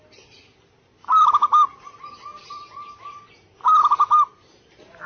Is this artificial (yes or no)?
no